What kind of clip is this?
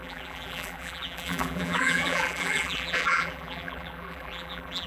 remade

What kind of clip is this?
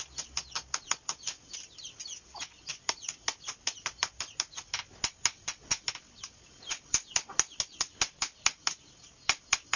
recorded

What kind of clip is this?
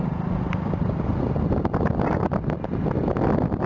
recorded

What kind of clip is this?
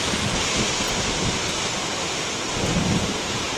recorded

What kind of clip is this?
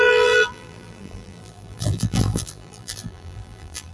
remade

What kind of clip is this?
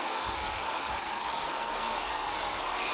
remade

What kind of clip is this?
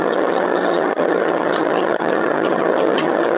remade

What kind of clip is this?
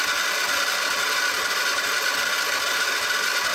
recorded